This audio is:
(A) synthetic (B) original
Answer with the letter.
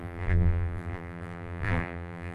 A